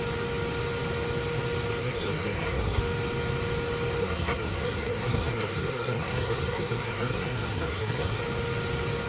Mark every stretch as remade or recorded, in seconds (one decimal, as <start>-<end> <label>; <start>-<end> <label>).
0.0-1.8 recorded; 1.8-2.8 remade; 2.8-4.0 recorded; 4.0-8.2 remade; 8.2-9.1 recorded

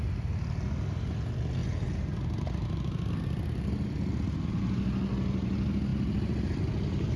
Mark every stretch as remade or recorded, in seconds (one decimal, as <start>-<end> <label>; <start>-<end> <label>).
0.0-1.6 recorded; 1.6-3.1 remade; 3.1-7.2 recorded

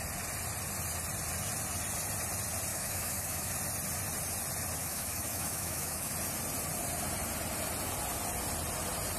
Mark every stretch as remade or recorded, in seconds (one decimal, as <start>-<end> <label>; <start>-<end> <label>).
0.0-2.7 recorded; 2.7-3.5 remade; 3.5-4.8 recorded; 4.8-6.1 remade; 6.1-9.2 recorded

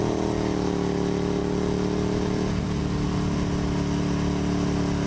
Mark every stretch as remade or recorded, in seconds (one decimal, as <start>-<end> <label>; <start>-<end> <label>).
0.0-5.1 recorded

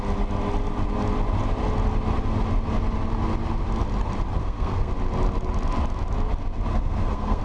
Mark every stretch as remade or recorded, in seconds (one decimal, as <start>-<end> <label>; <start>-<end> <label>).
0.0-4.4 recorded; 4.4-4.9 remade; 4.9-6.7 recorded; 6.7-7.4 remade